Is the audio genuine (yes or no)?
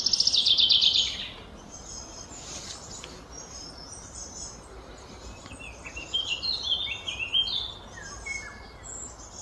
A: yes